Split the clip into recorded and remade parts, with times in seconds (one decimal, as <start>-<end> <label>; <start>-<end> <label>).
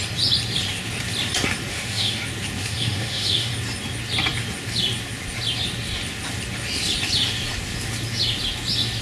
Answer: 0.0-1.7 recorded; 1.7-2.2 remade; 2.2-2.6 recorded; 2.6-3.5 remade; 3.5-9.0 recorded